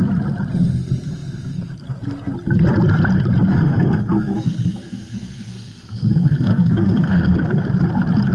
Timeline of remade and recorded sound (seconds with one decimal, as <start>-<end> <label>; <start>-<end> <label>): 0.0-3.5 recorded; 3.5-7.6 remade; 7.6-8.3 recorded